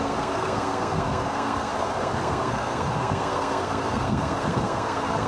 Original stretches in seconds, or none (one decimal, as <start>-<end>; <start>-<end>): none

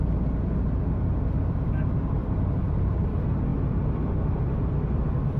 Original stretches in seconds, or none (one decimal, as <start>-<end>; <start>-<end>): 0.0-2.2; 3.0-5.4